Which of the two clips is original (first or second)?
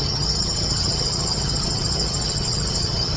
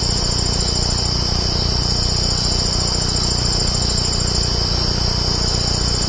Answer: second